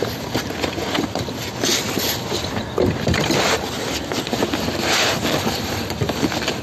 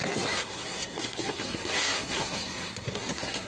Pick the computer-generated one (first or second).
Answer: second